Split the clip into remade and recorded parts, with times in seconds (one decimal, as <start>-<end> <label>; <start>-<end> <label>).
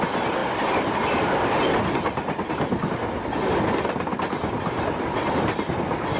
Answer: 0.0-6.2 recorded